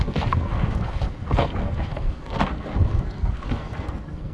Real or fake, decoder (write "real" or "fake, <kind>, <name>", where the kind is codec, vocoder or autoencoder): fake, codec, SNAC